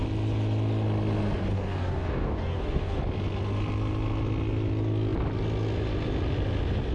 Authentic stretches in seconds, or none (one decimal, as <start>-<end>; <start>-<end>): 0.0-1.5; 3.0-6.9